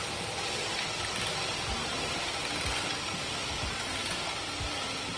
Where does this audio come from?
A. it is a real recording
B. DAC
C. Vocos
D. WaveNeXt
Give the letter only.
A